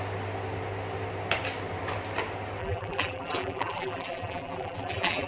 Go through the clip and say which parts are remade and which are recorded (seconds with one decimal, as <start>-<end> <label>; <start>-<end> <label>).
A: 0.0-2.6 recorded; 2.6-5.3 remade